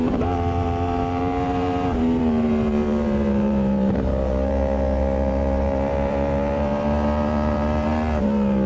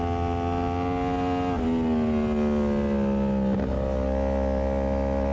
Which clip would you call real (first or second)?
second